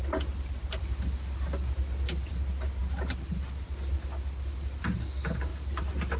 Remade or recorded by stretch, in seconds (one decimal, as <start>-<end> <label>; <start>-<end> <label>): 0.0-6.2 recorded